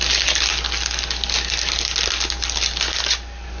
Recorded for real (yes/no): yes